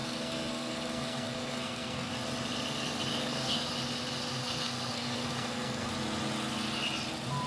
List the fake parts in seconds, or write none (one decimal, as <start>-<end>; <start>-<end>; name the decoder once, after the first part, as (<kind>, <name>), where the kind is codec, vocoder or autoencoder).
0.0-2.1 (codec, SNAC); 3.1-3.7; 4.4-5.9